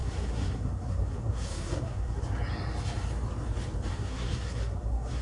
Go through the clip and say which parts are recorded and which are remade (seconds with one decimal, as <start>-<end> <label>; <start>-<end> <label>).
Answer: 0.0-2.2 remade; 2.2-3.9 recorded; 3.9-5.2 remade